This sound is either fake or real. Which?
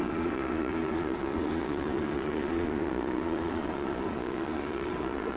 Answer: fake